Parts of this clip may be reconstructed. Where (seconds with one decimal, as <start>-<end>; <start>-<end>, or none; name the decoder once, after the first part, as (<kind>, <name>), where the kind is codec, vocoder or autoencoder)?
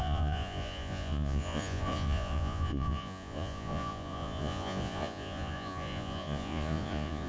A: 0.0-7.3 (vocoder, Vocos)